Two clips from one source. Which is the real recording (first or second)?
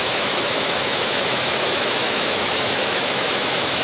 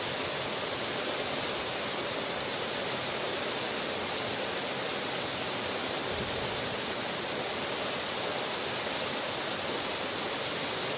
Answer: second